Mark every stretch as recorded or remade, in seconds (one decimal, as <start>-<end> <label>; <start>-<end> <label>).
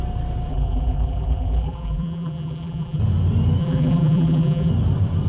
0.0-0.5 recorded; 0.5-3.0 remade; 3.0-3.6 recorded; 3.6-4.7 remade; 4.7-5.3 recorded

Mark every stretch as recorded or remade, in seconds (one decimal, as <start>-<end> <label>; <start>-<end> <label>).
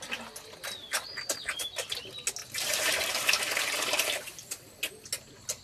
0.0-2.4 recorded; 2.4-4.6 remade; 4.6-5.6 recorded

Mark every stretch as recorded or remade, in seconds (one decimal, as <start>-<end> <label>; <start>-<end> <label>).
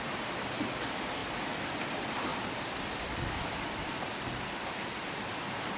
0.0-2.3 recorded; 2.3-4.6 remade; 4.6-5.8 recorded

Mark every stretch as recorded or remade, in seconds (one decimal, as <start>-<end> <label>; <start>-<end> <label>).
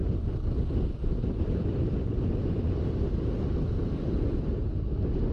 0.0-5.3 recorded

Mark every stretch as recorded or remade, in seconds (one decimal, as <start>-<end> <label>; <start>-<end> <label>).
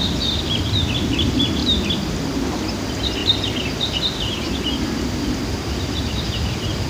0.0-1.6 remade; 1.6-2.4 recorded; 2.4-3.2 remade; 3.2-6.2 recorded; 6.2-6.9 remade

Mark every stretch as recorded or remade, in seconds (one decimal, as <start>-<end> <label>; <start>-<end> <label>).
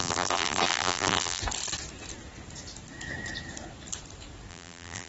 0.0-1.4 remade; 1.4-4.5 recorded; 4.5-5.1 remade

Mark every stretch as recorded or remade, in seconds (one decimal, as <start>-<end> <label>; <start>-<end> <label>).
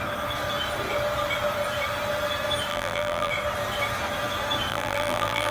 0.0-2.7 recorded; 2.7-3.3 remade; 3.3-4.7 recorded; 4.7-5.5 remade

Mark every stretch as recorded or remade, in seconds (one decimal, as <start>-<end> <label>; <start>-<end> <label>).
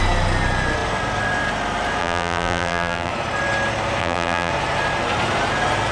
0.0-2.0 recorded; 2.0-3.1 remade; 3.1-4.0 recorded; 4.0-4.5 remade; 4.5-5.9 recorded